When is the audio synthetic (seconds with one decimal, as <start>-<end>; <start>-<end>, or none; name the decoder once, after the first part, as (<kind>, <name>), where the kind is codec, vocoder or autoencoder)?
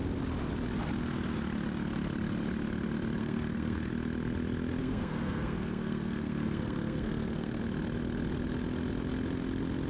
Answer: 3.2-3.9 (codec, SNAC); 4.8-7.6